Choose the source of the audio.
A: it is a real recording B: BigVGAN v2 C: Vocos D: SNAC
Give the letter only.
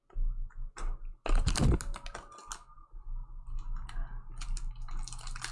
A